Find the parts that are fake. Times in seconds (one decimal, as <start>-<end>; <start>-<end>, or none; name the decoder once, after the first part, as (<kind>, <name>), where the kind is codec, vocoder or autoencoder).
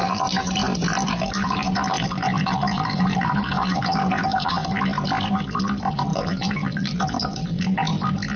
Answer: 0.0-4.5 (vocoder, BigVGAN v2); 6.1-7.6